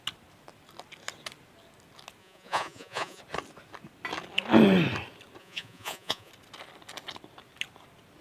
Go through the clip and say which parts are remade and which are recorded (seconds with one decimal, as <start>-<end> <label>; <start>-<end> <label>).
0.0-2.2 recorded; 2.2-3.2 remade; 3.2-5.4 recorded; 5.4-6.3 remade; 6.3-8.2 recorded